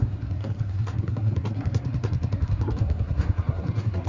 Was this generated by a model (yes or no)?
yes